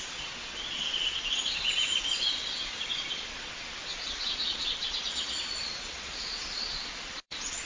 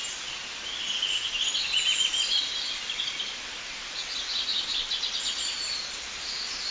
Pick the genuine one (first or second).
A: second